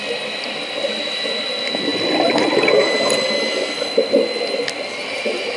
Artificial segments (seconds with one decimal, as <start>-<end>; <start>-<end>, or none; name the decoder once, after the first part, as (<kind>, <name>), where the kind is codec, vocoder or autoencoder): none

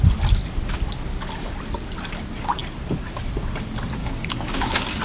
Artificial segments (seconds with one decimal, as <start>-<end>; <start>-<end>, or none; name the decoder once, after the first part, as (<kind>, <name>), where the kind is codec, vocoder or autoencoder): 4.0-5.0 (codec, DAC)